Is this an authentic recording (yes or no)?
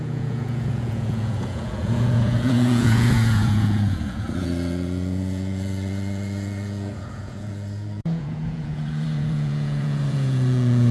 no